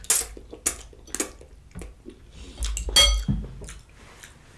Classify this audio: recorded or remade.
recorded